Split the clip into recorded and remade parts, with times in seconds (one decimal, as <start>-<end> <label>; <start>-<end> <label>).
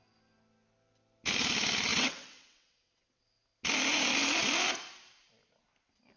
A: 0.0-1.9 recorded; 1.9-3.2 remade; 3.2-6.2 recorded